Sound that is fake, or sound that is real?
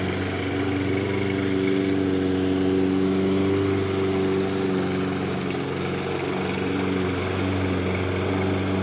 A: real